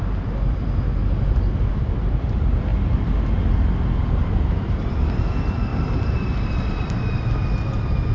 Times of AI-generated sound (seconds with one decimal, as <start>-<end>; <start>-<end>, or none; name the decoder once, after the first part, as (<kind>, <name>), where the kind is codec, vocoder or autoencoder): 4.0-5.2 (vocoder, BigVGAN v2); 5.7-6.7

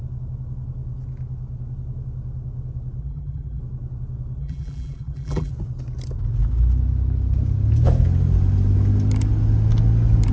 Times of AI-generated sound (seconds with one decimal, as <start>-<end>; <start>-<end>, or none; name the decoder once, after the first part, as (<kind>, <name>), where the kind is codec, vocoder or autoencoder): 3.0-3.6 (vocoder, BigVGAN v2); 4.4-5.5

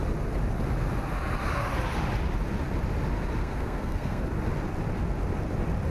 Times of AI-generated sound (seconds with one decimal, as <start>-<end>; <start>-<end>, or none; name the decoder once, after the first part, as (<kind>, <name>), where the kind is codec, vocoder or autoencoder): 3.4-4.2 (codec, SNAC)

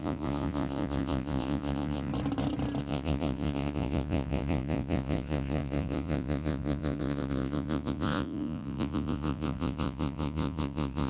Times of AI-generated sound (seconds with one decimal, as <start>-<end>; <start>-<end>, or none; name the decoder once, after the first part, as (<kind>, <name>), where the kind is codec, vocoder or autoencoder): 0.0-2.1 (vocoder, Vocos); 2.8-11.1